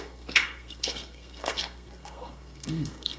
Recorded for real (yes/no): no